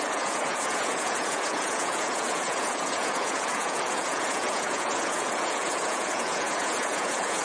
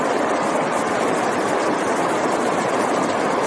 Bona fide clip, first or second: second